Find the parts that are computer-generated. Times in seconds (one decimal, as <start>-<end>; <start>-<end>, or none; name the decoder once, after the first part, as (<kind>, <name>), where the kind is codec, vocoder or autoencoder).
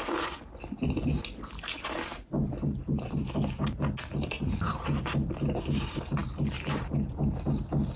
none